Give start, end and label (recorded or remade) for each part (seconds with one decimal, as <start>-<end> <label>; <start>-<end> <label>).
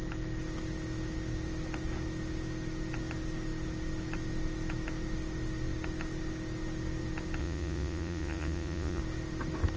0.0-7.4 recorded; 7.4-9.0 remade; 9.0-9.8 recorded